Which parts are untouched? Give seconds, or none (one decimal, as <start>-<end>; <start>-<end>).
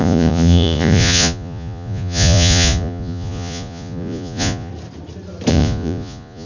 4.7-5.5